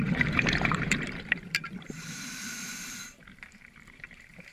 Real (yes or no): no